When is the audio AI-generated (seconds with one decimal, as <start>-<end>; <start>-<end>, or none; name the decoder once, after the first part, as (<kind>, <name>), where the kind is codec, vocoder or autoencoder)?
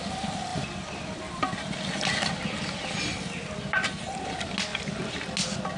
0.5-2.3 (vocoder, BigVGAN v2)